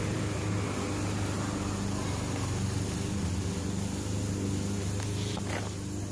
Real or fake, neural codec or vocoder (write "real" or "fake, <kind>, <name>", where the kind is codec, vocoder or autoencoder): real